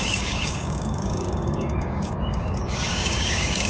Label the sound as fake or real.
fake